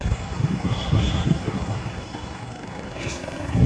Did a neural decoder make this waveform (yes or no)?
yes